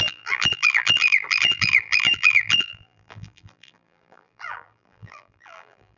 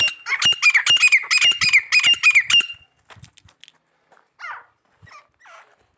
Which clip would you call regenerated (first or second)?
first